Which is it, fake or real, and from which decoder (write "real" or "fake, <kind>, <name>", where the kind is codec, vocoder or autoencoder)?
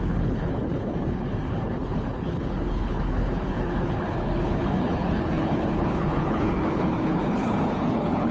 fake, codec, HILCodec